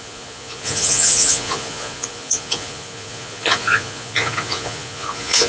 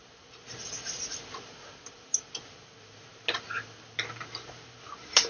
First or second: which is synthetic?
first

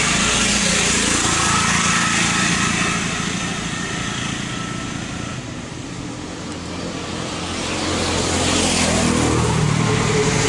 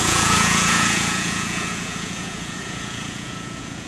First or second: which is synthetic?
second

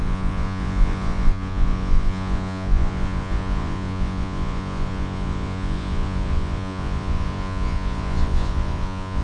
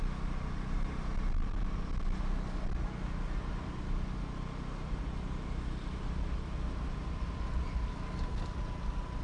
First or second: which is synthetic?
first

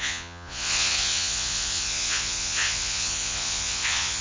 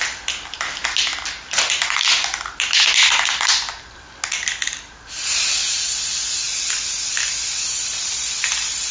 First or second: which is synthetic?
first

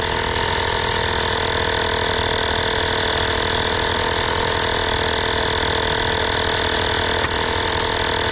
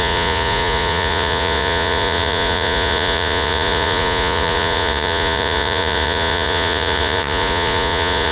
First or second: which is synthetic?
second